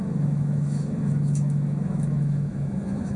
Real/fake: fake